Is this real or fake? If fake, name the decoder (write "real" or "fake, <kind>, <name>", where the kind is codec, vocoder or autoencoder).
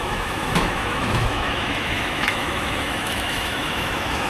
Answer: fake, autoencoder, DAC-VAE